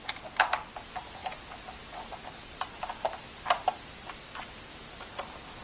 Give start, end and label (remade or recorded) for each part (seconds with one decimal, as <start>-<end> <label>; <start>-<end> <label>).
0.0-5.6 recorded